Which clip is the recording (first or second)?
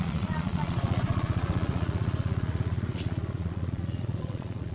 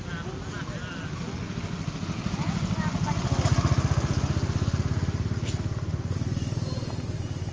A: second